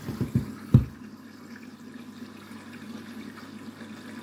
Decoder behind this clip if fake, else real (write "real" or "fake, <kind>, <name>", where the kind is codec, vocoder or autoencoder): real